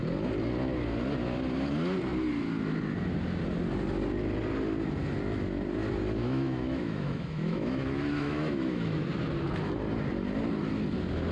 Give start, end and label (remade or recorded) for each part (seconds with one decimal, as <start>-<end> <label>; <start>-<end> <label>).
0.0-6.2 recorded; 6.2-9.1 remade; 9.1-11.3 recorded